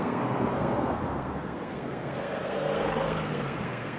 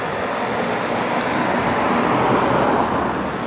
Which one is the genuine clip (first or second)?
second